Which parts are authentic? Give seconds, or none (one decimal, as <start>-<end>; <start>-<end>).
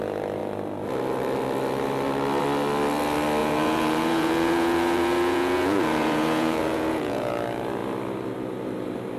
0.0-3.4; 7.3-9.2